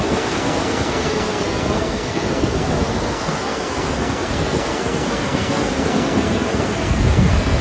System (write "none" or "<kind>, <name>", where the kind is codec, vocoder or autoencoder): codec, SNAC